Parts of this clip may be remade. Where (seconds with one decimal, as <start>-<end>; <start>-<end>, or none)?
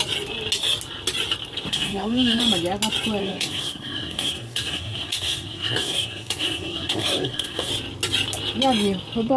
1.7-2.4; 3.2-7.7